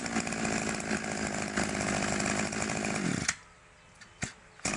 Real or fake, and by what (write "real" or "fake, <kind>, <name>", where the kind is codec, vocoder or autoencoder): real